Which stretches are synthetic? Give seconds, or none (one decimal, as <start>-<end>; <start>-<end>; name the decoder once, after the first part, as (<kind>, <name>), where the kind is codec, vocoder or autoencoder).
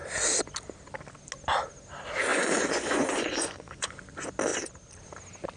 2.3-3.9 (vocoder, Vocos)